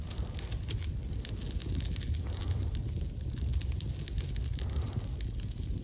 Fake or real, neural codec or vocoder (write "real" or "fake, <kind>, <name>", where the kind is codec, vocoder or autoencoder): real